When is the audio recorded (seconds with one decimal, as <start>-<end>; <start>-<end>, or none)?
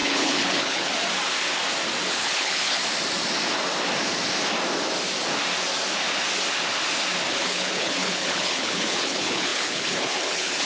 0.9-2.1; 2.8-7.3